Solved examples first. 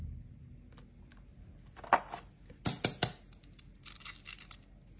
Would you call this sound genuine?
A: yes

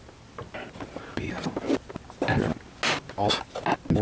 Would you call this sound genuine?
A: yes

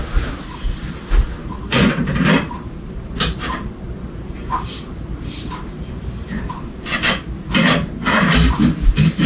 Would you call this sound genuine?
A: no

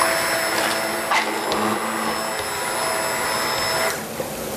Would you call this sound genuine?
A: yes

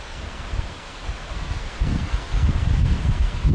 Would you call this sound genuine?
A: no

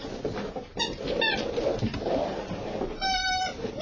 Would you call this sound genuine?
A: no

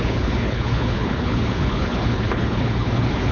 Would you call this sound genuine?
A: no